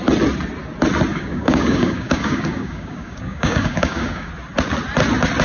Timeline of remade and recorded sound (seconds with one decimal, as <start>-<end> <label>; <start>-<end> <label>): 0.0-1.1 recorded; 1.1-4.3 remade; 4.3-5.4 recorded